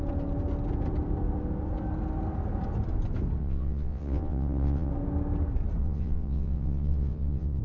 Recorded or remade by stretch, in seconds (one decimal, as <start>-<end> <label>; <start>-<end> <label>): 0.0-3.4 recorded; 3.4-4.9 remade; 4.9-5.8 recorded; 5.8-7.6 remade